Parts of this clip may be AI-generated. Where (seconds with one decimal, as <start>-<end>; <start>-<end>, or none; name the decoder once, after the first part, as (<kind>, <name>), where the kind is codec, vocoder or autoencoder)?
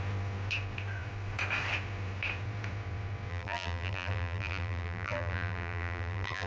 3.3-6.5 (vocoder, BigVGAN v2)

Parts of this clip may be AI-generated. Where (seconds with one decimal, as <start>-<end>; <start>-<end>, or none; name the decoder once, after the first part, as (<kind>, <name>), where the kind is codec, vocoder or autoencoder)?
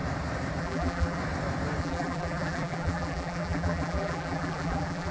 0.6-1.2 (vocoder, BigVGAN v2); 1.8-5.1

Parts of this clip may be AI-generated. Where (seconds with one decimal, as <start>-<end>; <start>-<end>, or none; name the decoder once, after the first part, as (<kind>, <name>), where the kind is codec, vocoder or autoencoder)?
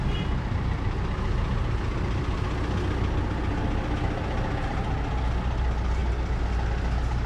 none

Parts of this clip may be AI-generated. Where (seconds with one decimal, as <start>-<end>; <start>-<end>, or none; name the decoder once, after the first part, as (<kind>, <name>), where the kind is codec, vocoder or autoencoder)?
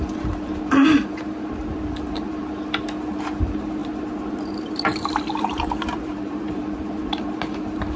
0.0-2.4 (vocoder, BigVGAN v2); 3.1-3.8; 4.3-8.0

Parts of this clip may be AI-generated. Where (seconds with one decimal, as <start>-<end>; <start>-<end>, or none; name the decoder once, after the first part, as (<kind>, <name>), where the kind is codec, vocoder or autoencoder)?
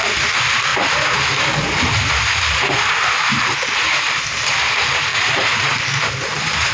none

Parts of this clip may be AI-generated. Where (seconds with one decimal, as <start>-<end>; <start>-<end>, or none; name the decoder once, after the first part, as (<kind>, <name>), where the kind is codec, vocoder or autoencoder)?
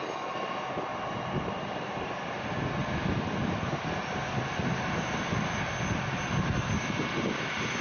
0.9-2.1 (vocoder, BigVGAN v2)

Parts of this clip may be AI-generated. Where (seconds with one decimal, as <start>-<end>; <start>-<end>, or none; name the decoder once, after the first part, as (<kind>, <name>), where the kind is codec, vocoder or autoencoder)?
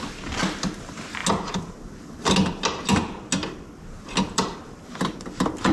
none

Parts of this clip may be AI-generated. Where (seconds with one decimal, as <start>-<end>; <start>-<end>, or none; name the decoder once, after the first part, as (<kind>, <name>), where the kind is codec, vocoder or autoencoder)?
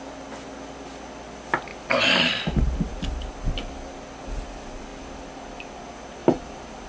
1.7-2.3 (vocoder, BigVGAN v2); 4.9-5.8; 6.2-6.9